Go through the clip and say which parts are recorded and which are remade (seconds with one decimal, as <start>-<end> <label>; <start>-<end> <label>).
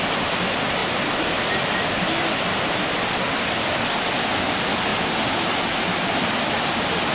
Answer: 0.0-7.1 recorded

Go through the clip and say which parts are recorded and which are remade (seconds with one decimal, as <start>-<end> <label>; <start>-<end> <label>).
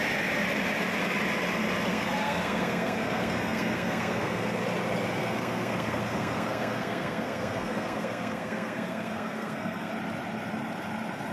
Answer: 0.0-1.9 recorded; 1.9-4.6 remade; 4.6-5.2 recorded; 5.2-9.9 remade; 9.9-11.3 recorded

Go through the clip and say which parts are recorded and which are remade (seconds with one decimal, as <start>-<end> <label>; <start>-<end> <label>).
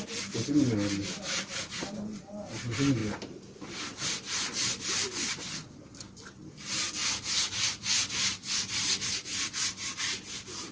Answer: 0.0-10.7 recorded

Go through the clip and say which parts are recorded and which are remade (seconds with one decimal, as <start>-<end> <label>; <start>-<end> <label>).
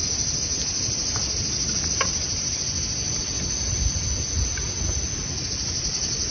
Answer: 0.0-6.3 recorded